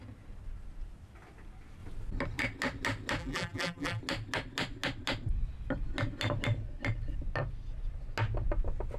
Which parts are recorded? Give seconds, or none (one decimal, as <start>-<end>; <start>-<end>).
0.0-3.2; 4.0-9.0